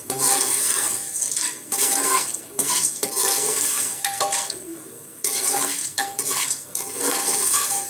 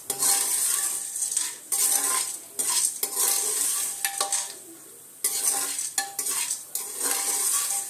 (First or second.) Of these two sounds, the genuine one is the second